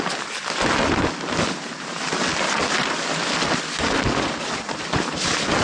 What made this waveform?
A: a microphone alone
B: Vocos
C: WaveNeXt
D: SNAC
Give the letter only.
A